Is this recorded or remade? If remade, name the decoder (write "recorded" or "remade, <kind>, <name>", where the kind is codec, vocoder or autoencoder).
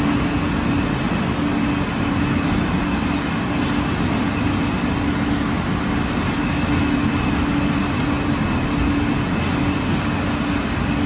recorded